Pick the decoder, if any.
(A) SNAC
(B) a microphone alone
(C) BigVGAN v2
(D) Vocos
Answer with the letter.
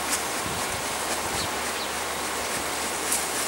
B